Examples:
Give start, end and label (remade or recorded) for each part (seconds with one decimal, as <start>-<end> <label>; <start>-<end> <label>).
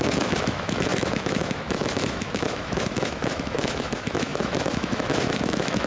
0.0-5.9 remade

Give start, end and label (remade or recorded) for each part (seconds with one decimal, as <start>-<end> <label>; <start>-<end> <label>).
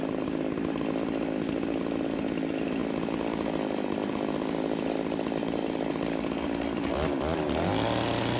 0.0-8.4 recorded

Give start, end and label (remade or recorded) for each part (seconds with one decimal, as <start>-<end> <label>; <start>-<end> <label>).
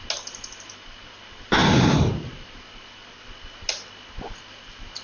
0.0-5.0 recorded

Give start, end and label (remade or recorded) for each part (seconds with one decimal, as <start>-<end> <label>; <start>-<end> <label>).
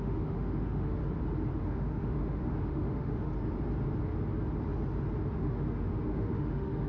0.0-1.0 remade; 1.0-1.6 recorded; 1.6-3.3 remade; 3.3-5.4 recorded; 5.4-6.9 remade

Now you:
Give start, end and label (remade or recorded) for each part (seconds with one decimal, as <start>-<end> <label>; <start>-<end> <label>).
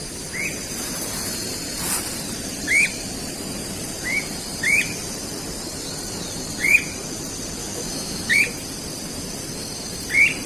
0.0-7.6 recorded; 7.6-8.4 remade; 8.4-10.5 recorded